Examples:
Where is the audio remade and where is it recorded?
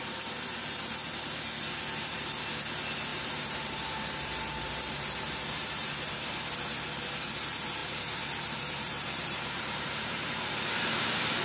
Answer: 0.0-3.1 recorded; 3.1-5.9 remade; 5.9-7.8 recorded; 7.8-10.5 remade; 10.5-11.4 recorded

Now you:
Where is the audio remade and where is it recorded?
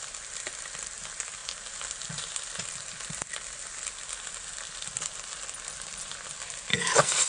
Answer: 0.0-6.7 recorded; 6.7-7.3 remade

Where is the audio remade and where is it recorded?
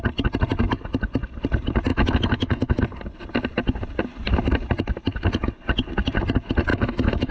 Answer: 0.0-1.9 recorded; 1.9-2.8 remade; 2.8-6.7 recorded; 6.7-7.3 remade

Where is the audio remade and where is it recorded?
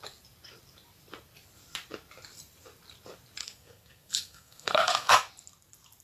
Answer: 0.0-3.4 recorded; 3.4-5.3 remade; 5.3-6.0 recorded